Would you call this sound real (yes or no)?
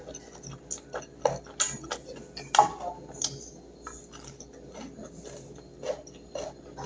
yes